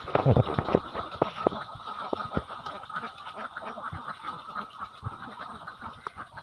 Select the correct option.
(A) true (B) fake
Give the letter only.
B